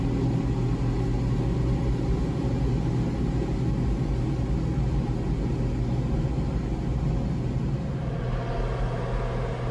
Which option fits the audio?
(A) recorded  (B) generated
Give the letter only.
A